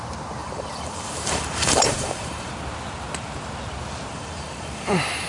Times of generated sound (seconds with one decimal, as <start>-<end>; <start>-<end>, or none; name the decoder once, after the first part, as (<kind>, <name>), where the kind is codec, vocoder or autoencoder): 0.4-2.5 (vocoder, BigVGAN v2); 4.1-5.3

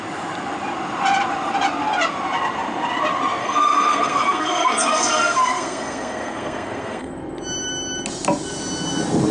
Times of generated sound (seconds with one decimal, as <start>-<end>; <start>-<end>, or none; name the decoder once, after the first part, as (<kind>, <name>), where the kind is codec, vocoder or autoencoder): 3.4-7.1 (codec, SNAC)

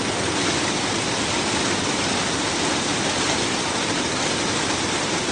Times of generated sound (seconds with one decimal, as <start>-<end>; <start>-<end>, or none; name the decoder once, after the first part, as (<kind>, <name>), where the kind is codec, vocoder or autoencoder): none

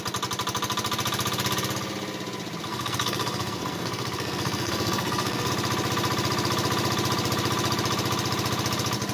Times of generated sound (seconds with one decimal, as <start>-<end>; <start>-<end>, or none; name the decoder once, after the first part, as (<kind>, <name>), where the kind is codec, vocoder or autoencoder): 2.7-5.5 (codec, SNAC)